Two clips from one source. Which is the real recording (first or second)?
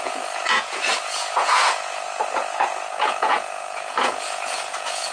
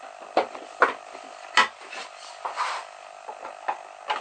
second